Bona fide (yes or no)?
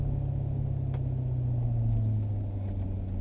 yes